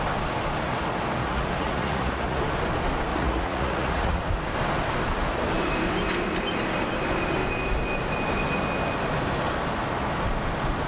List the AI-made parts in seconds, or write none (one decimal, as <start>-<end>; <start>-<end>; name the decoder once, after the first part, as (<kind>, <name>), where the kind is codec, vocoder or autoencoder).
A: 1.2-2.4 (vocoder, Vocos); 3.1-4.2

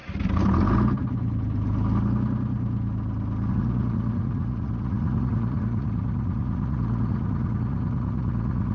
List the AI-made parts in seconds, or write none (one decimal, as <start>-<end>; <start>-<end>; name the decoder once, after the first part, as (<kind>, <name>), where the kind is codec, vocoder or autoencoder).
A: 3.5-8.7 (vocoder, Vocos)

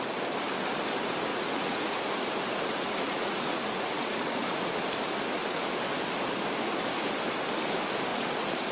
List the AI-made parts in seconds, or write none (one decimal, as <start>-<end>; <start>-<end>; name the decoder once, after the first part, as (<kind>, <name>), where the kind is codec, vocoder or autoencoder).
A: 1.3-4.7 (vocoder, Vocos); 8.1-8.7